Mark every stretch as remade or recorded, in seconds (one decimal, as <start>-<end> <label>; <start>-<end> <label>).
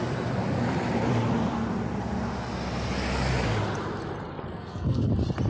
0.0-4.5 recorded; 4.5-5.1 remade; 5.1-5.5 recorded